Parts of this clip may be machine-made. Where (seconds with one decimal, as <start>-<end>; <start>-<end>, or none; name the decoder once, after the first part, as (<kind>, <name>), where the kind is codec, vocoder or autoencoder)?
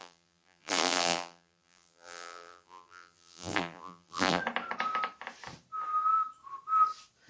0.0-4.4 (vocoder, BigVGAN v2)